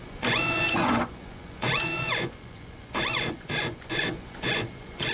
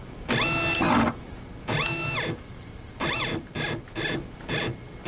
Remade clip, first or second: first